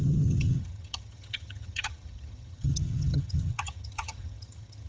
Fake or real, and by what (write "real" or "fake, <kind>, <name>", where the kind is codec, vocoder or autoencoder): fake, vocoder, HiFi-GAN